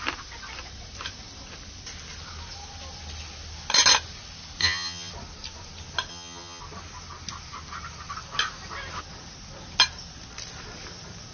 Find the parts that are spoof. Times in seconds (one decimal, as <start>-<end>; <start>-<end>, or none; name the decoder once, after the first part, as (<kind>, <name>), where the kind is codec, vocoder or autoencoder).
4.6-5.1 (vocoder, HiFi-GAN); 6.1-6.6